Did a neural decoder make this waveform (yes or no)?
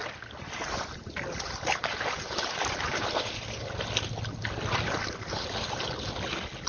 no